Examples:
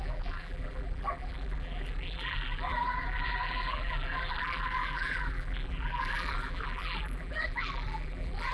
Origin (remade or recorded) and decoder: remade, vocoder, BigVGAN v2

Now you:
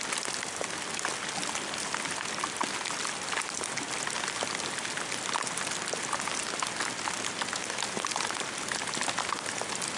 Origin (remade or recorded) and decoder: recorded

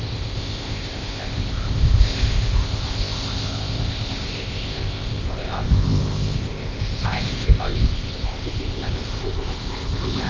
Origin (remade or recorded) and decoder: remade, codec, ZipCodec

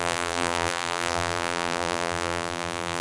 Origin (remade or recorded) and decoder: remade, vocoder, BigVGAN v2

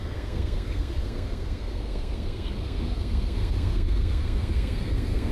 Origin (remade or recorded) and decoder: remade, codec, SNAC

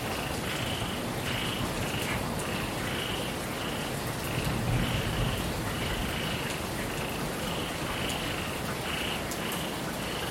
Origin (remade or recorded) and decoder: recorded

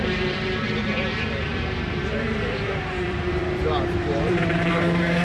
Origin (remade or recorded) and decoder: remade, vocoder, BigVGAN v2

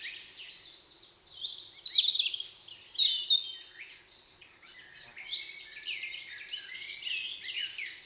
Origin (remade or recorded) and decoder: recorded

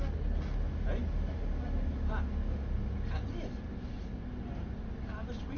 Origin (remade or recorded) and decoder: recorded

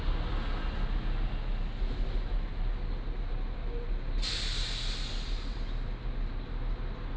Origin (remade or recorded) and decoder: recorded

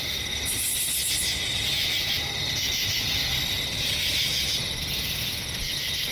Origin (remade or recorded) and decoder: recorded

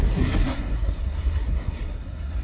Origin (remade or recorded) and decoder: remade, codec, SNAC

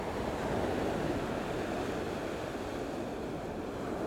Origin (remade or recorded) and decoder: recorded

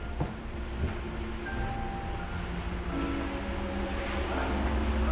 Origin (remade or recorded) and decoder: recorded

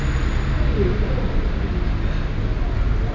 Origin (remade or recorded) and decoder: recorded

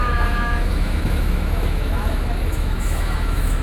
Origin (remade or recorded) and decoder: remade, autoencoder, DAC-VAE